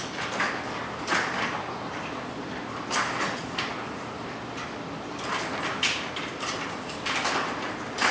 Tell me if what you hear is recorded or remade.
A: remade